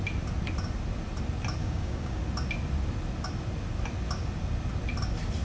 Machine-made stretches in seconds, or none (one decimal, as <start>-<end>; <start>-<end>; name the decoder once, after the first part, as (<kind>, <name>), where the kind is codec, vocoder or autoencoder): 1.6-2.2 (codec, DAC)